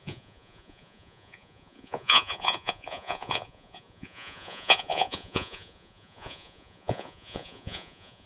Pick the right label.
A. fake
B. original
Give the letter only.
A